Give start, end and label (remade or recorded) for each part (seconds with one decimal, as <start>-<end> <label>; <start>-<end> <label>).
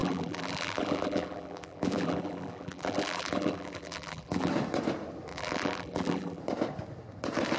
0.0-4.5 remade; 4.5-5.3 recorded; 5.3-6.4 remade; 6.4-7.6 recorded